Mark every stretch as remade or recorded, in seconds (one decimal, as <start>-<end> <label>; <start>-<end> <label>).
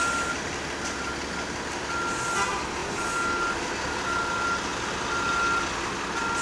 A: 0.0-6.4 recorded